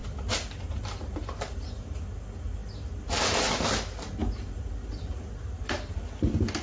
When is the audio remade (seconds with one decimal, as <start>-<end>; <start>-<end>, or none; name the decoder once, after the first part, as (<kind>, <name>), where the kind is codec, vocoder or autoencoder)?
none